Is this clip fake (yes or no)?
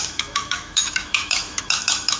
yes